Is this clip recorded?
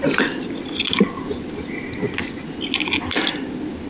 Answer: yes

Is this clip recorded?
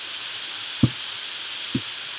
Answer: yes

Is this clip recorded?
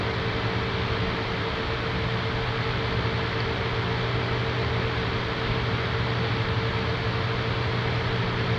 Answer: yes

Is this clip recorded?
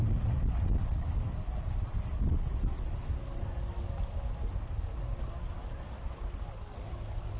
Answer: yes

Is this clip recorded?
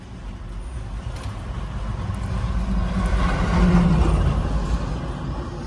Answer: yes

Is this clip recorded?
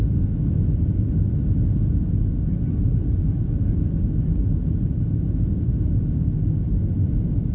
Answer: yes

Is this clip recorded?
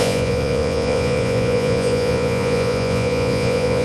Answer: no